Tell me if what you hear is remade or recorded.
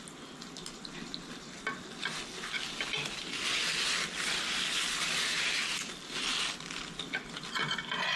recorded